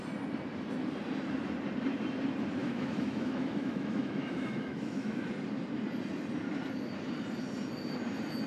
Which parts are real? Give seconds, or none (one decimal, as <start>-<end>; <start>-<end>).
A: 0.0-2.6; 5.3-8.5